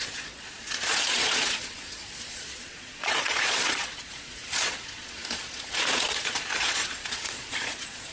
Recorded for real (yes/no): no